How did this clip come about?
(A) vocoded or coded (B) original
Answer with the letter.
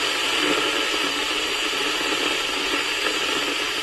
B